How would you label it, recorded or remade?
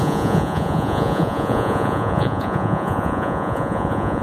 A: remade